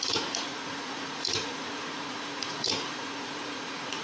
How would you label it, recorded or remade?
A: remade